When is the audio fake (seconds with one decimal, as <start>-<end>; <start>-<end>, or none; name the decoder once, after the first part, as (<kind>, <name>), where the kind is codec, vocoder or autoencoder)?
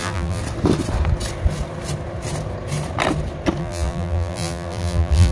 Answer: 0.0-0.4 (vocoder, BigVGAN v2); 3.6-5.3